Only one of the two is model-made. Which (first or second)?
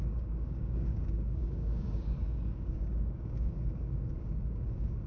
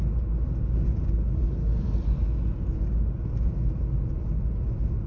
first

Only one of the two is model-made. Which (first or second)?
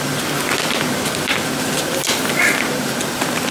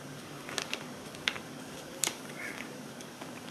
second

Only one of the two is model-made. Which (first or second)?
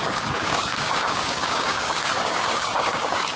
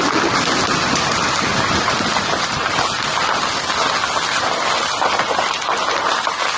first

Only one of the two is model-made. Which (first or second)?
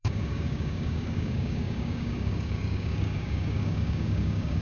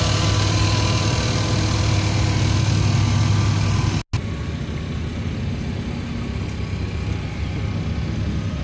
first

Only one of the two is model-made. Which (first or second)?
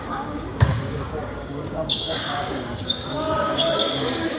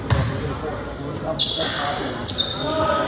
first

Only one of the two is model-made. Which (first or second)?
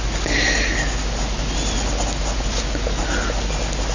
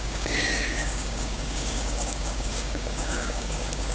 second